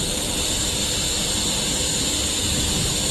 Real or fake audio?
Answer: real